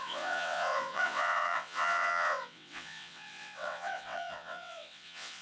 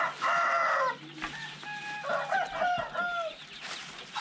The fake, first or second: first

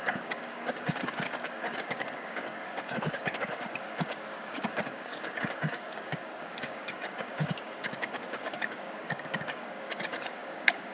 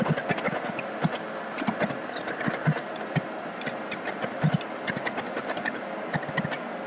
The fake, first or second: first